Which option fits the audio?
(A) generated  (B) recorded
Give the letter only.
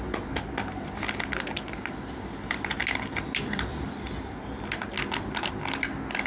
B